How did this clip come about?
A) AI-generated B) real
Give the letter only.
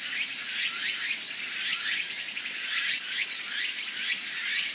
B